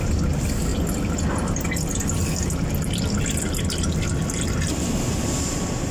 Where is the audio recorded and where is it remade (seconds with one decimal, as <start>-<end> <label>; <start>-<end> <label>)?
0.0-5.9 recorded